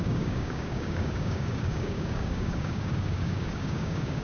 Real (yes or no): no